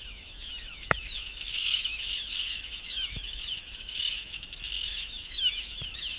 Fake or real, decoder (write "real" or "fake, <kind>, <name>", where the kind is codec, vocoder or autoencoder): fake, autoencoder, DAC-VAE